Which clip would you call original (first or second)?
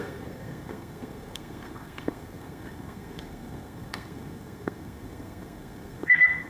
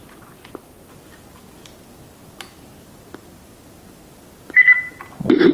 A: second